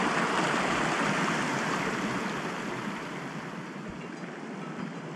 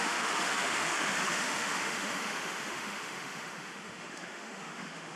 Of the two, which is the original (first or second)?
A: first